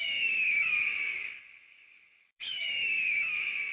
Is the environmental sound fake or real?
fake